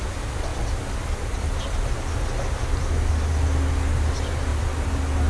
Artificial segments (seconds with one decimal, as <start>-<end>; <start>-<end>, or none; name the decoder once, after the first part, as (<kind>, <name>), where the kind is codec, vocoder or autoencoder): none